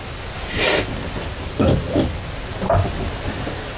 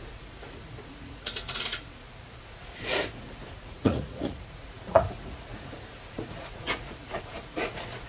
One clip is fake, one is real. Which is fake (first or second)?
second